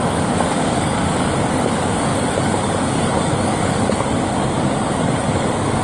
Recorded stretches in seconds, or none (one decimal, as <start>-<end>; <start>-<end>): none